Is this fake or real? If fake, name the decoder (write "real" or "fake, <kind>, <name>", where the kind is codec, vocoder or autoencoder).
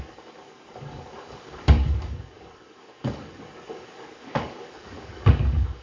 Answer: fake, codec, DAC